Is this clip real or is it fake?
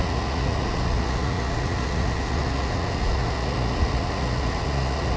fake